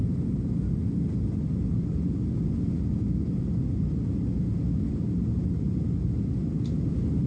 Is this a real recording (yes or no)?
yes